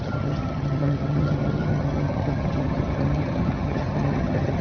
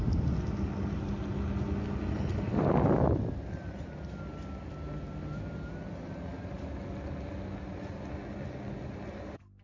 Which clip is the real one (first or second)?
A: second